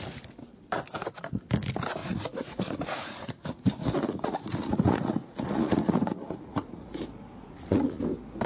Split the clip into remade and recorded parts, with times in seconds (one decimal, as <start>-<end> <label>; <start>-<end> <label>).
0.0-2.0 recorded; 2.0-6.9 remade; 6.9-7.4 recorded; 7.4-8.0 remade; 8.0-8.5 recorded